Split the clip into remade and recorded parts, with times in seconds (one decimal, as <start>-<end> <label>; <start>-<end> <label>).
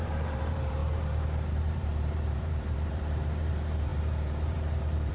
0.0-5.1 remade